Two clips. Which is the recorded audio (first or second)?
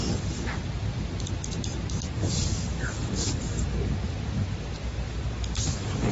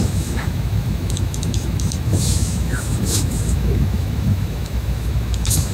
first